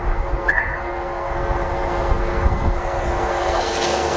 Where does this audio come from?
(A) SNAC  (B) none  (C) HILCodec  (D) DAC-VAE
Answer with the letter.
A